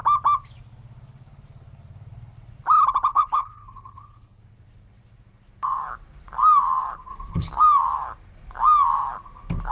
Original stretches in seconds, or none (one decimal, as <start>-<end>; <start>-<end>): 0.0-3.1; 4.4-7.1; 7.6-9.7